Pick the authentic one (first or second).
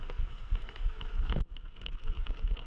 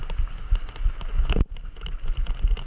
second